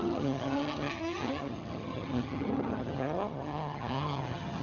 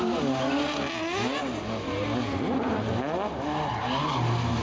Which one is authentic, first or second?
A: second